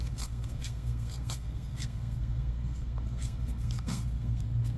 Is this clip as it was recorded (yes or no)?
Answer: no